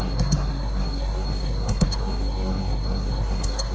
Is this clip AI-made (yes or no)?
yes